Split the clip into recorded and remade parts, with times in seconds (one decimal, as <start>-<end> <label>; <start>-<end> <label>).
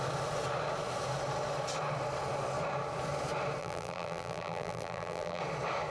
0.0-3.6 recorded; 3.6-5.4 remade; 5.4-5.9 recorded